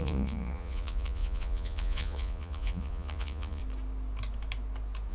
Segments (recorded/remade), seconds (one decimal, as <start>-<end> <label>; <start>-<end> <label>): 0.0-3.6 remade; 3.6-5.1 recorded